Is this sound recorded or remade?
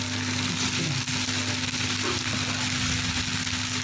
recorded